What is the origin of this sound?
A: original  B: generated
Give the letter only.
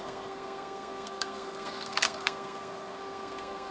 B